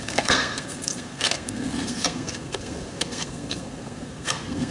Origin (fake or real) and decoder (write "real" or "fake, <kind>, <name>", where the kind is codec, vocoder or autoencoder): fake, codec, SNAC